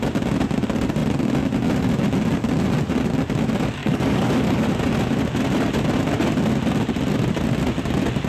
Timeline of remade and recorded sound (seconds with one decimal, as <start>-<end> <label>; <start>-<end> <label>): 0.0-3.8 recorded; 3.8-4.7 remade; 4.7-8.3 recorded